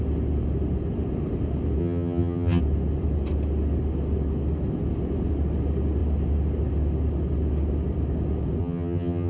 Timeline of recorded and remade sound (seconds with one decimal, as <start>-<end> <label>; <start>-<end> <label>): 0.0-1.8 recorded; 1.8-2.6 remade; 2.6-8.6 recorded; 8.6-9.3 remade